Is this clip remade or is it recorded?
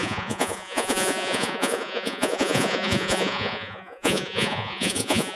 remade